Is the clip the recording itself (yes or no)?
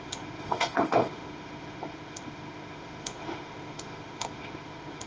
no